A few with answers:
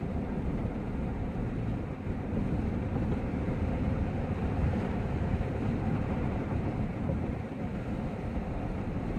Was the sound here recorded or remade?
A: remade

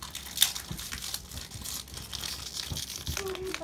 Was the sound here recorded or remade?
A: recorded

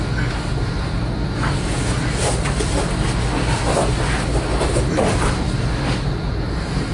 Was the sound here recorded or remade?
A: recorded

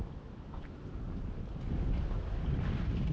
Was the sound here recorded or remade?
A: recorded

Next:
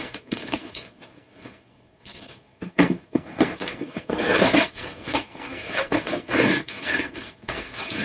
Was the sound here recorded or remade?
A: remade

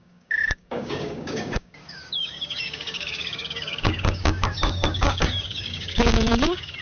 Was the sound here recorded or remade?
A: remade